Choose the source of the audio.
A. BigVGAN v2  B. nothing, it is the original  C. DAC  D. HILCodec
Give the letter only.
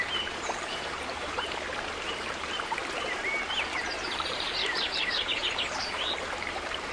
A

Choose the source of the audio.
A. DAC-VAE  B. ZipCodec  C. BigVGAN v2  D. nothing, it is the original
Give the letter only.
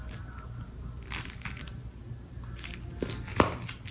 D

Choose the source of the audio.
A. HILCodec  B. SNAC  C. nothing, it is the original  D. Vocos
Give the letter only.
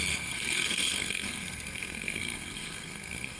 B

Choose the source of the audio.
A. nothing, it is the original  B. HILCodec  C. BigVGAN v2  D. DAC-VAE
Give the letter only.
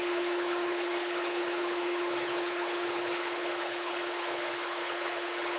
B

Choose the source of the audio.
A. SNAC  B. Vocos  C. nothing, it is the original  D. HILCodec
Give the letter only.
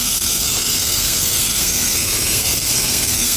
A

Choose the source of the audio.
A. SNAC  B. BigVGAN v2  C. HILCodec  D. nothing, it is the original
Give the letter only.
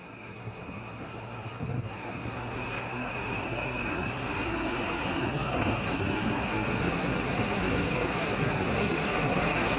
A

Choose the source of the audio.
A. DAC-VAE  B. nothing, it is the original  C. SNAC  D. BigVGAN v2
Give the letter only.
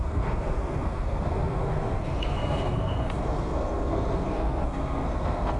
C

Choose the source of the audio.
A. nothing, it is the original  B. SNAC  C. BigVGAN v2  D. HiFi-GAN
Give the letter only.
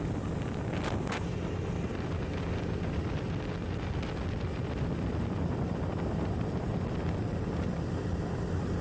A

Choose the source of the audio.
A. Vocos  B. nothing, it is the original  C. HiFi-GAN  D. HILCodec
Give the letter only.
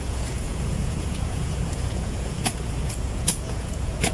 A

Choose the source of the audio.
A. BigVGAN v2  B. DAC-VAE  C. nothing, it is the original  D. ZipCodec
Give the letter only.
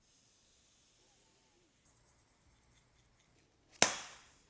C